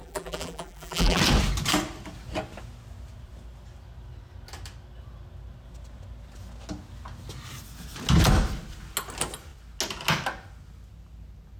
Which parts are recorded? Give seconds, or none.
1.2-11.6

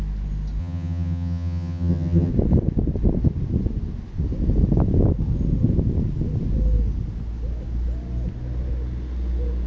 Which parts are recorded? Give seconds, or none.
0.0-0.6; 2.3-9.7

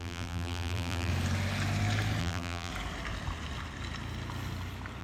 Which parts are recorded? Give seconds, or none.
1.1-2.2; 2.7-5.0

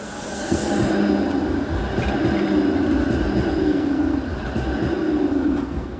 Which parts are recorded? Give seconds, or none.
0.7-3.6; 4.2-5.3